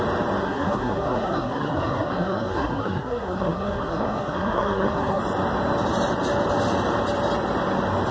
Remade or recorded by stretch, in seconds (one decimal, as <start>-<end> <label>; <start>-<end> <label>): 0.0-0.4 recorded; 0.4-5.2 remade; 5.2-8.1 recorded